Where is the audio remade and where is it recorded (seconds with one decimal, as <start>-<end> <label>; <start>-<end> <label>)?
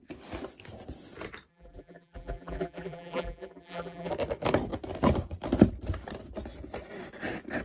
0.0-1.5 recorded; 1.5-4.1 remade; 4.1-7.6 recorded